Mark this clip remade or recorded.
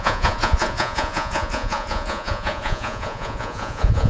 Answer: remade